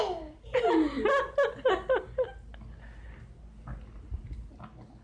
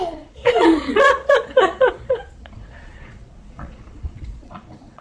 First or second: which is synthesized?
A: second